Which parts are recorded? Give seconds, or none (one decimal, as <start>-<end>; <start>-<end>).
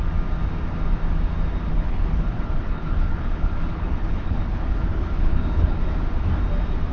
0.0-1.7; 5.8-6.9